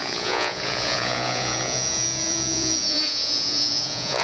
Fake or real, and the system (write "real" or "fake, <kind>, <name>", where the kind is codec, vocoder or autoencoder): fake, vocoder, Vocos